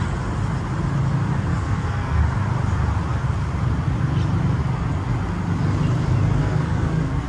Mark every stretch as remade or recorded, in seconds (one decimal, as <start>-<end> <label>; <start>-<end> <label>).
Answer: 0.0-1.5 recorded; 1.5-2.2 remade; 2.2-6.4 recorded; 6.4-7.3 remade

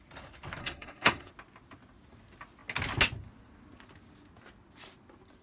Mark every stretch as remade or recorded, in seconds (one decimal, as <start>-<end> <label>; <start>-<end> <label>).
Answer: 0.0-0.6 recorded; 0.6-1.3 remade; 1.3-5.4 recorded